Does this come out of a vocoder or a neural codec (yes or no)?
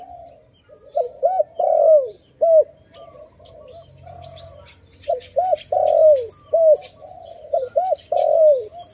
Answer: no